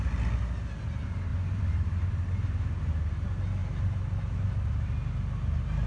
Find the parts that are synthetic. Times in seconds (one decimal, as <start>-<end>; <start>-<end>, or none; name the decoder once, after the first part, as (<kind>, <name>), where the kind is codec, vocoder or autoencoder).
1.3-2.9 (vocoder, BigVGAN v2); 3.6-4.2